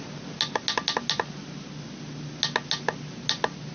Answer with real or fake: real